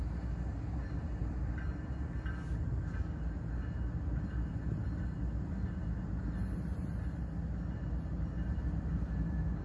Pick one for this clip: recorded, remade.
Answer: recorded